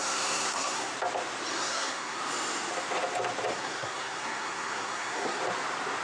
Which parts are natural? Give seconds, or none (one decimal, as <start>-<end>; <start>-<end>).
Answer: 0.9-1.5; 2.2-3.5; 5.4-6.0